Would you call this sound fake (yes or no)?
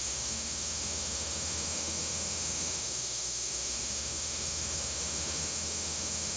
yes